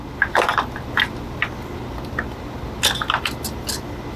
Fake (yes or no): no